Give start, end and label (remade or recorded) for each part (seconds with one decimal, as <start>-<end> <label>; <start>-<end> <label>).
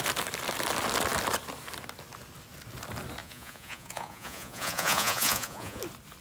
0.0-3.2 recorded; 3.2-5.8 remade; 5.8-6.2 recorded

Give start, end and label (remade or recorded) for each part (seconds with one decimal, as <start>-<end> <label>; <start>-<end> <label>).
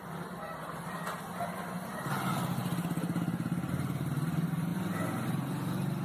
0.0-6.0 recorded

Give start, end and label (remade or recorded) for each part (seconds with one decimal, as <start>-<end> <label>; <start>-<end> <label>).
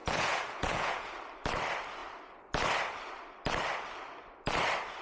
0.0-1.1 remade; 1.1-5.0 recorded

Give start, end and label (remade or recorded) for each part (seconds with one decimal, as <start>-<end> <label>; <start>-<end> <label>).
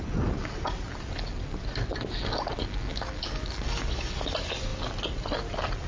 0.0-2.9 recorded; 2.9-4.1 remade; 4.1-5.9 recorded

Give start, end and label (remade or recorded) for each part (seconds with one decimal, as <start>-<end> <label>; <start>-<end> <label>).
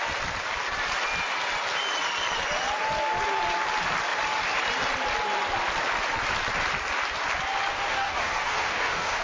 0.0-7.7 recorded; 7.7-9.2 remade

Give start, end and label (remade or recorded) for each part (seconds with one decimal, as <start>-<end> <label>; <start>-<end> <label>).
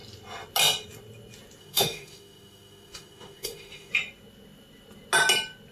0.0-1.6 recorded; 1.6-3.9 remade; 3.9-5.7 recorded